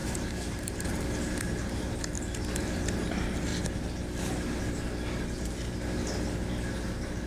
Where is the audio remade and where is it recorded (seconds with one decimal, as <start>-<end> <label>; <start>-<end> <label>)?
0.0-2.1 remade; 2.1-7.3 recorded